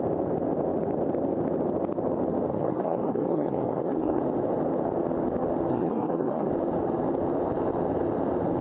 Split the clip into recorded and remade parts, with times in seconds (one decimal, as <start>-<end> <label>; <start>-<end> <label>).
0.0-2.5 recorded; 2.5-4.2 remade; 4.2-5.7 recorded; 5.7-6.5 remade; 6.5-8.6 recorded